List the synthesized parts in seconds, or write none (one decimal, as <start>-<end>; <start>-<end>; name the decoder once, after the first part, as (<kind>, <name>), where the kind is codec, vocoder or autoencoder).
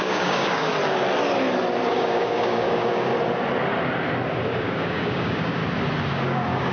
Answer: 0.0-0.7 (codec, DAC); 1.9-3.1; 4.5-5.6; 6.1-6.7